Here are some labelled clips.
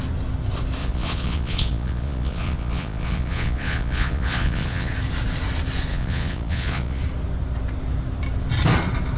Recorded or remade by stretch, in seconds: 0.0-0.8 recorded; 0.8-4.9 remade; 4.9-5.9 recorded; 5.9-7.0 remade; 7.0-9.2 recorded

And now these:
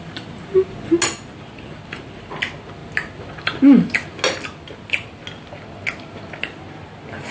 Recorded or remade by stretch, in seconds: 0.0-7.3 recorded

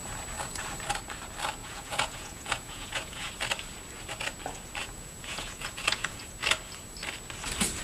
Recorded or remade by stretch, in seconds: 0.0-1.6 recorded; 1.6-3.3 remade; 3.3-4.8 recorded; 4.8-6.3 remade; 6.3-7.8 recorded